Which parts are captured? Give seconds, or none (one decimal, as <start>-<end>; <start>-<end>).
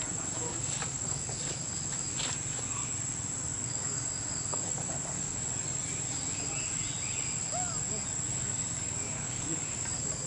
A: 0.0-0.5; 1.6-3.5; 5.5-8.3